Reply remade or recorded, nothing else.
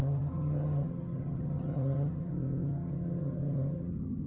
remade